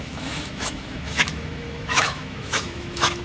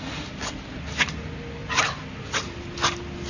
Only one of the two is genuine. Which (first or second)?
second